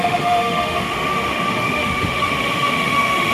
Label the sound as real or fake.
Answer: fake